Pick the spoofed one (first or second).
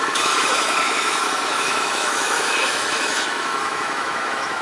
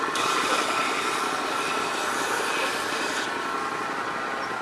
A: first